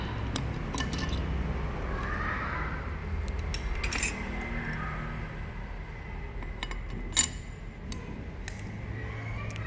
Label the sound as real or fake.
real